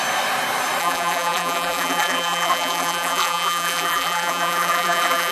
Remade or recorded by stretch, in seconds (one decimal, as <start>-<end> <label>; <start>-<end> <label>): 0.0-0.8 recorded; 0.8-5.3 remade